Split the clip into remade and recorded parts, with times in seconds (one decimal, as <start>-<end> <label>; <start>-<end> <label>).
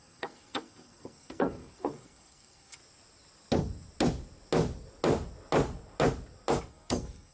0.0-2.8 remade; 2.8-6.6 recorded; 6.6-7.3 remade